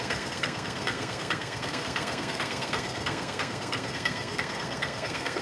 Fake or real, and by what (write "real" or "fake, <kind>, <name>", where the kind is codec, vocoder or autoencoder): fake, codec, SNAC